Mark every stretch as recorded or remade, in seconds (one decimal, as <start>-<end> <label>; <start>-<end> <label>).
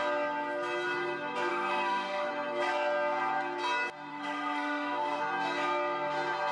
0.0-1.5 recorded; 1.5-2.3 remade; 2.3-4.1 recorded; 4.1-5.2 remade; 5.2-6.5 recorded